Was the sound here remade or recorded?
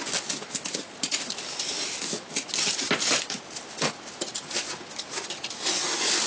recorded